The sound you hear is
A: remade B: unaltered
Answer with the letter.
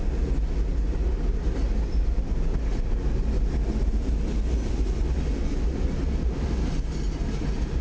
B